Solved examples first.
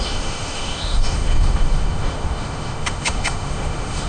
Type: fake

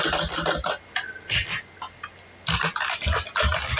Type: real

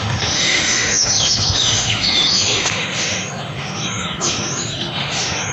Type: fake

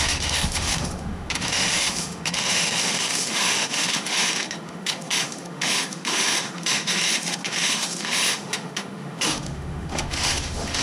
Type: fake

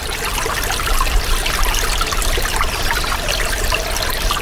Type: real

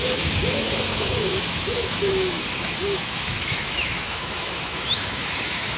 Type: fake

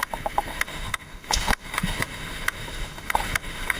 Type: fake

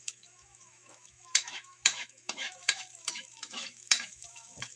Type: fake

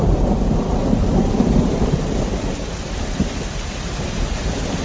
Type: real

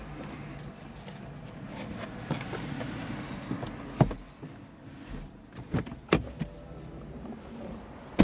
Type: real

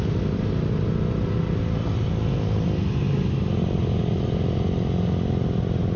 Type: real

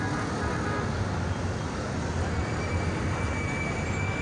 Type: real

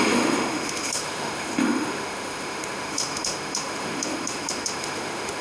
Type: fake